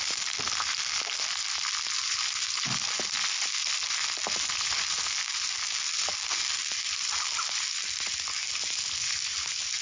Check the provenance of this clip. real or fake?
real